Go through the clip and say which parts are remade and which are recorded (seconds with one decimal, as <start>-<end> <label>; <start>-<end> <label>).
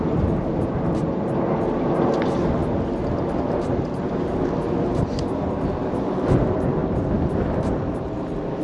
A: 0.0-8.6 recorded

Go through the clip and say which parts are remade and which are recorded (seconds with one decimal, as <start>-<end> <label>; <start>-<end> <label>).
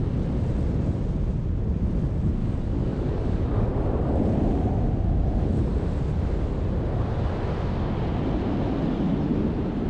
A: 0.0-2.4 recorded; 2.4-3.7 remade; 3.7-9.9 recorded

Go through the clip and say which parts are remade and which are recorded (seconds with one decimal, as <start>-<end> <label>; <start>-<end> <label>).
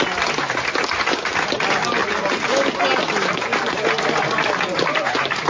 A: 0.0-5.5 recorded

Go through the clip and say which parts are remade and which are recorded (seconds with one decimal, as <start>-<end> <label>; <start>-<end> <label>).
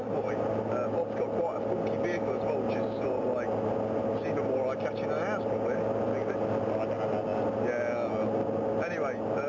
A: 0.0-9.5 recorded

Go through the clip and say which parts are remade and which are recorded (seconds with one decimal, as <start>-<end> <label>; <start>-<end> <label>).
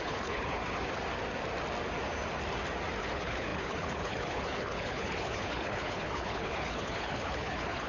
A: 0.0-0.6 remade; 0.6-3.0 recorded; 3.0-7.9 remade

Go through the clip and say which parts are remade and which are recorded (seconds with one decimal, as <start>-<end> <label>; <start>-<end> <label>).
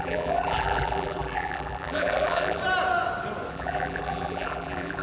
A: 0.0-2.6 remade; 2.6-3.5 recorded; 3.5-5.0 remade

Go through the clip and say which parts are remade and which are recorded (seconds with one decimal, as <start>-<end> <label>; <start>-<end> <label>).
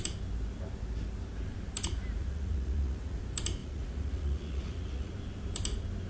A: 0.0-2.2 recorded; 2.2-3.2 remade; 3.2-3.6 recorded; 3.6-5.1 remade; 5.1-6.1 recorded